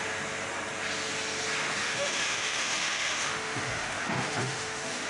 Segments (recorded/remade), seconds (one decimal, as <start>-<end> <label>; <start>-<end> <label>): 0.0-1.8 recorded; 1.8-5.1 remade

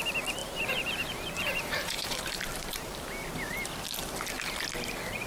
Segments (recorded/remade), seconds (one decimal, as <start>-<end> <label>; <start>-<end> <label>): 0.0-0.4 recorded; 0.4-3.0 remade; 3.0-5.3 recorded

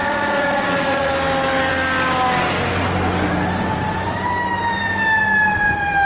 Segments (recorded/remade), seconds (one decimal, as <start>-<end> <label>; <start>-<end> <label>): 0.0-1.1 remade; 1.1-6.1 recorded

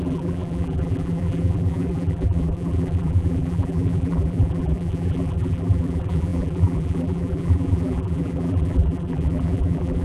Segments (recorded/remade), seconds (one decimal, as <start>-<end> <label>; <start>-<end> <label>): 0.0-10.0 remade

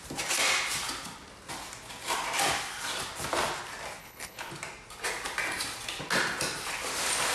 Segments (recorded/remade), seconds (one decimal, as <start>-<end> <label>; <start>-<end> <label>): 0.0-4.0 recorded; 4.0-4.5 remade; 4.5-7.3 recorded